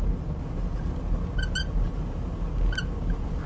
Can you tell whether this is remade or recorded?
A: recorded